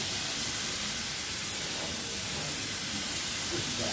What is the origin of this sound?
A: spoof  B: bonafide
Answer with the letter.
B